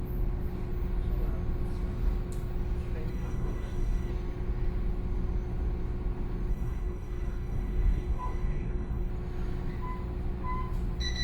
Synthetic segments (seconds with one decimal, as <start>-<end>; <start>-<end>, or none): 3.1-4.1; 6.5-9.1